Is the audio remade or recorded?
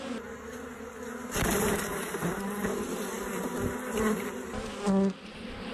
recorded